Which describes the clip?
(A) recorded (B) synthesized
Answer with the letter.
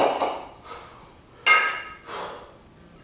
A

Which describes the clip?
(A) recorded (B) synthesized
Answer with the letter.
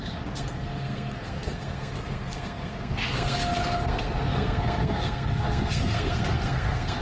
B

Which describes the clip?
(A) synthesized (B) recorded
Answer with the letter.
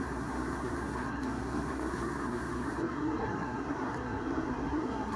A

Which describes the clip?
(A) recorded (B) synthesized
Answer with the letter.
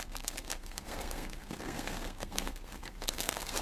B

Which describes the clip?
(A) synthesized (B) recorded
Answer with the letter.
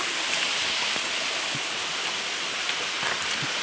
B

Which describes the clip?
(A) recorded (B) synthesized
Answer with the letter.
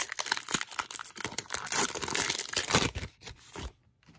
A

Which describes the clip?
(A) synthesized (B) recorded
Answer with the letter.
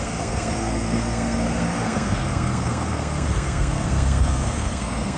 A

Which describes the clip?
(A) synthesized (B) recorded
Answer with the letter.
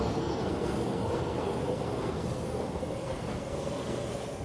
A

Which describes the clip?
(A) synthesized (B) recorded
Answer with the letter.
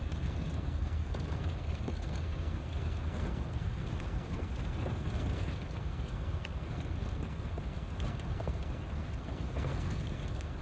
A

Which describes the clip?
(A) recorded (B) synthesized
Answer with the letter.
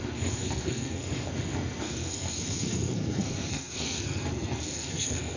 B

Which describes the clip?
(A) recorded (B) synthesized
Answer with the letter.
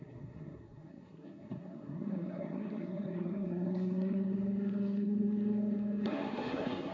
B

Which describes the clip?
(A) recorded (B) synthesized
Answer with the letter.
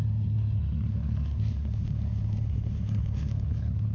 B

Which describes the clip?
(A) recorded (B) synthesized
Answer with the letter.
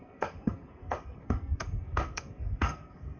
B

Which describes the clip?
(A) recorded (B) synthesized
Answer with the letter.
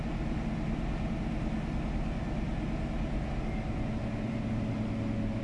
A